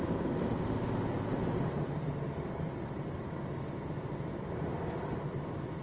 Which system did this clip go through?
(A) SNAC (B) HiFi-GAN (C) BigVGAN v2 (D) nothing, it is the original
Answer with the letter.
C